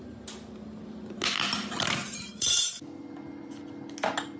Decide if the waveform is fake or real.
real